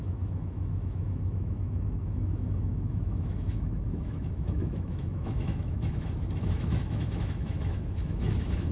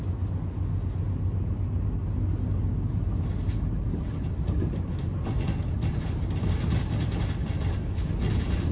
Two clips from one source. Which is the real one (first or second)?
second